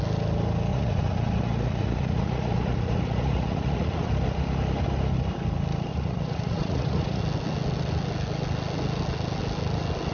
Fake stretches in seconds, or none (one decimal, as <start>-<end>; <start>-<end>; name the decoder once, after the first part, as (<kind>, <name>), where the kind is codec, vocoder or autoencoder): 0.7-4.1 (vocoder, Vocos); 5.9-7.2

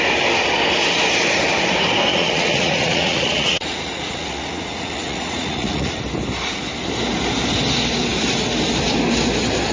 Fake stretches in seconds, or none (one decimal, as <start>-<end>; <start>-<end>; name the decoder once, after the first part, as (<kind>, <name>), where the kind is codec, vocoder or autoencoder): 2.1-6.0 (vocoder, Vocos)

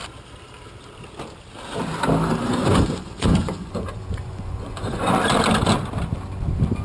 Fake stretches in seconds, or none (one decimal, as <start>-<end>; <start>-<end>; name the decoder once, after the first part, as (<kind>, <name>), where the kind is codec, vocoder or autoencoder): 2.4-5.1 (vocoder, Vocos)

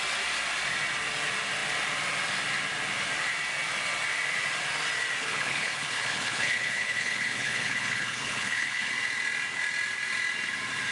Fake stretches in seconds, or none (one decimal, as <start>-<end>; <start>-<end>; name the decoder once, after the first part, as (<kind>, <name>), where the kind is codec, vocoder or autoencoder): 5.2-8.9 (codec, HILCodec)

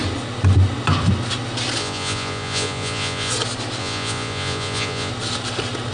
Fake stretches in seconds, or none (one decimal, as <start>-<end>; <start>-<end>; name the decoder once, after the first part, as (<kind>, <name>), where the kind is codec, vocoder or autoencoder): 1.8-3.3 (vocoder, Vocos); 3.8-5.1

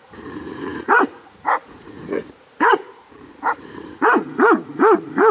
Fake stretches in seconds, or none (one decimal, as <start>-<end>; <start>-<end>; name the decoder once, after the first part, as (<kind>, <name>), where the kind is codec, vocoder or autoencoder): 0.0-5.3 (vocoder, Vocos)